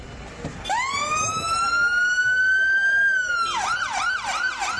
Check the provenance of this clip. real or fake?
real